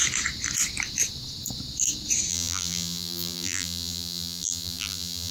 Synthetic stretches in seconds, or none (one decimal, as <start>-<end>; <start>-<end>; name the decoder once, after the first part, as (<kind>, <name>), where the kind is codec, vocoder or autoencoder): 2.3-5.3 (vocoder, BigVGAN v2)